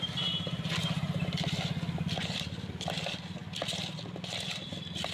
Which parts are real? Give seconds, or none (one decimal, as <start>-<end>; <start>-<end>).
0.0-5.1